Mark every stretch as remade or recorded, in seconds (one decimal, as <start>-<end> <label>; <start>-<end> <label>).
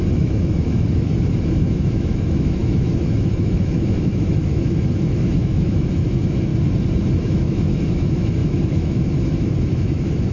0.0-6.5 remade; 6.5-7.1 recorded; 7.1-10.3 remade